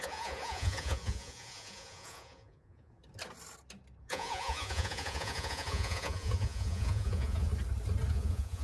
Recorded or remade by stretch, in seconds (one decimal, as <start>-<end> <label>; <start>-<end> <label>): 0.0-3.0 remade; 3.0-4.0 recorded; 4.0-7.5 remade; 7.5-8.1 recorded; 8.1-8.6 remade